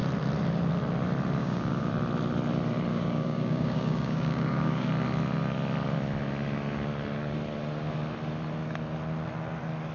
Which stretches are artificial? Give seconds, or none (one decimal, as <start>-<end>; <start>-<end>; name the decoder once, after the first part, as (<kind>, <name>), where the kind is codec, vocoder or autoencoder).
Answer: 1.4-1.9 (codec, DAC); 2.9-4.9